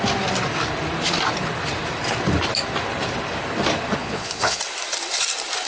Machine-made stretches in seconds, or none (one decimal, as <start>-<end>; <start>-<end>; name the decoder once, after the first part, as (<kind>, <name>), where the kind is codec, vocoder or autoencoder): 4.0-4.6 (vocoder, Vocos)

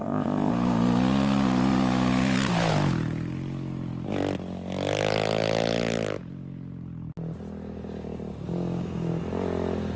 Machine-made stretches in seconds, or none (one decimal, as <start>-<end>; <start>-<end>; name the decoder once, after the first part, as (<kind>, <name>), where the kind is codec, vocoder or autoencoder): 0.0-0.5 (codec, ZipCodec)

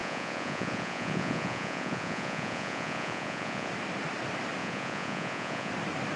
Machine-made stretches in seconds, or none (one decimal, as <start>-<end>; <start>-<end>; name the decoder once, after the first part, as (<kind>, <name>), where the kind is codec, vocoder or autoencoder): 0.0-3.7 (vocoder, Vocos); 4.6-5.7

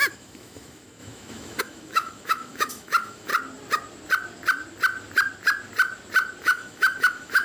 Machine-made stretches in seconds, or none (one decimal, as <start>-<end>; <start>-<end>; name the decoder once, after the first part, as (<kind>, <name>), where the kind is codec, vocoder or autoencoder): 0.0-3.3 (autoencoder, DAC-VAE); 6.4-7.4

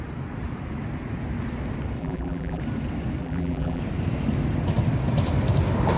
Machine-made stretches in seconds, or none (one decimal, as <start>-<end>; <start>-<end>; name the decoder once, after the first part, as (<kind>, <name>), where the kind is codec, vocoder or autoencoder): 2.0-2.6 (vocoder, BigVGAN v2); 3.2-3.8

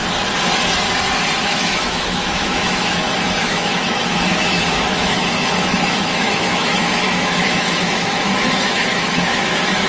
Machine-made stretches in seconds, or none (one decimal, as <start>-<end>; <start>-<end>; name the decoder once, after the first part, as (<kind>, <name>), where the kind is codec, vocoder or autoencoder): 1.4-9.9 (autoencoder, DAC-VAE)

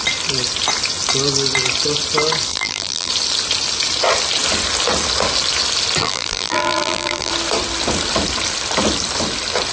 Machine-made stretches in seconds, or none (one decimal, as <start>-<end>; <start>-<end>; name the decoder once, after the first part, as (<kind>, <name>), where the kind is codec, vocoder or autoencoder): 2.5-3.1 (vocoder, BigVGAN v2); 6.0-7.3

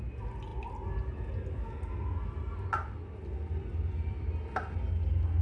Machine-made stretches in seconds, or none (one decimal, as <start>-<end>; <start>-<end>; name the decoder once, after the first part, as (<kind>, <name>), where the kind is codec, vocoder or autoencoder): none